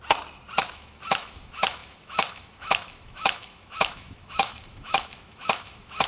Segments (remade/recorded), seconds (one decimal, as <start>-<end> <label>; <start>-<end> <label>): 0.0-0.7 recorded; 0.7-6.1 remade